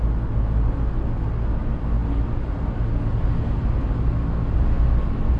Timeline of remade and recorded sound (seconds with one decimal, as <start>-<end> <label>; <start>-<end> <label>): 0.0-5.4 recorded